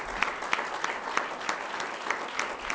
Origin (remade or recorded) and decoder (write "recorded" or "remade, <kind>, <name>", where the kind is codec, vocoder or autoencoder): recorded